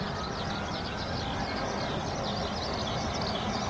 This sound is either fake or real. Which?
real